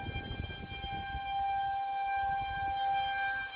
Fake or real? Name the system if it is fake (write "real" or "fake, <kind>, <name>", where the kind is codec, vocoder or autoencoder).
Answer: real